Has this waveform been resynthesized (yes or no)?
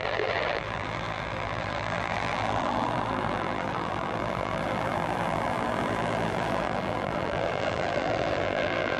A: yes